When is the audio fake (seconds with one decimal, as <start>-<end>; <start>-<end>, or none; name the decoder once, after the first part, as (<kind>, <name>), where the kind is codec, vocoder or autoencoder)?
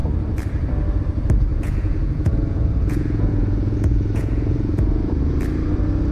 1.5-5.2 (vocoder, Vocos)